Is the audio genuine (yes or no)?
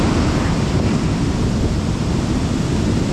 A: yes